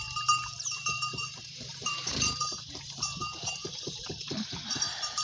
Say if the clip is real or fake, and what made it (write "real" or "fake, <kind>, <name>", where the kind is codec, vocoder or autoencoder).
fake, vocoder, BigVGAN v2